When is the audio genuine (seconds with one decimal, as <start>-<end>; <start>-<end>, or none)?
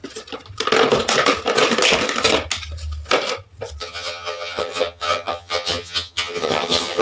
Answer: 0.0-3.8